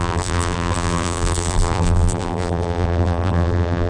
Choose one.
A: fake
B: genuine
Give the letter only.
A